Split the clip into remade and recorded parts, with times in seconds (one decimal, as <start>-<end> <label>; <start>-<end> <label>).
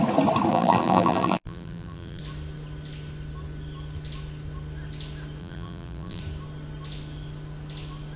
0.0-0.5 recorded; 0.5-2.2 remade; 2.2-5.4 recorded; 5.4-6.2 remade; 6.2-8.2 recorded